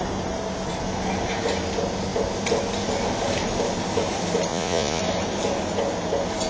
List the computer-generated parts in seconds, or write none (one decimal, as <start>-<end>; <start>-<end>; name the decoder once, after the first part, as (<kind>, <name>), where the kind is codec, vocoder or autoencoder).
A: 4.5-5.0 (vocoder, Vocos)